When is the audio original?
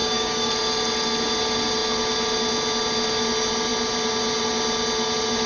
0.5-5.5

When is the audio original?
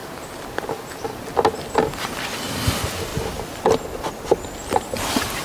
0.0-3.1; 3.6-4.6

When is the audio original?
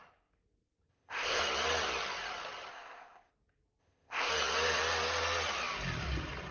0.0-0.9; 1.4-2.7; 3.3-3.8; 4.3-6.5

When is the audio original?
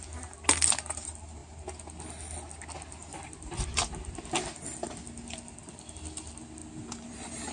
0.0-6.6; 7.1-7.5